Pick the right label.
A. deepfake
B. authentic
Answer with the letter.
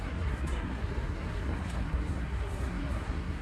A